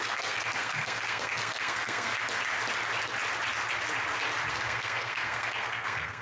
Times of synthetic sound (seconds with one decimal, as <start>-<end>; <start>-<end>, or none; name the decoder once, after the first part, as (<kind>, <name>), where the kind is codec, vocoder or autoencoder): 0.0-2.1 (codec, SNAC); 4.5-6.2